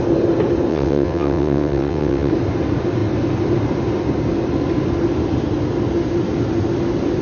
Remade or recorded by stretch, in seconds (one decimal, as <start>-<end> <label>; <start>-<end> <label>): 0.0-0.7 recorded; 0.7-2.3 remade; 2.3-7.2 recorded